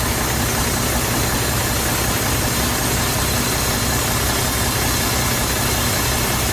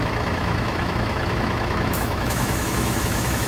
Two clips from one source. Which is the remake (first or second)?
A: second